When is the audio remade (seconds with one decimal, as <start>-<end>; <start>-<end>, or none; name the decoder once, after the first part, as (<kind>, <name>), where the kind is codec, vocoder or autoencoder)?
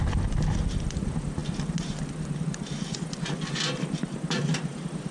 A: 0.0-1.4 (vocoder, BigVGAN v2); 3.8-5.1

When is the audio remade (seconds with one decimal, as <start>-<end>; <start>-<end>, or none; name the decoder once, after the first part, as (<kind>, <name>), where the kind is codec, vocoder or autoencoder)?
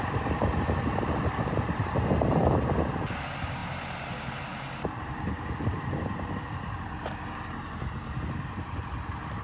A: none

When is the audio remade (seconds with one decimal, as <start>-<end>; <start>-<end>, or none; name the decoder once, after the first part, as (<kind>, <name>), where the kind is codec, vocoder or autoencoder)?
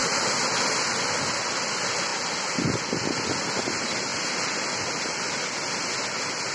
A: none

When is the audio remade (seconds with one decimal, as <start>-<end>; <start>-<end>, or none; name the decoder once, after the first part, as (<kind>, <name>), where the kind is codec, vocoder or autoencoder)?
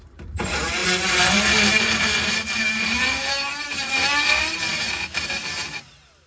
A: 0.0-6.3 (vocoder, BigVGAN v2)